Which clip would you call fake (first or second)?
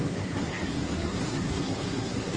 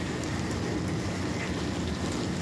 first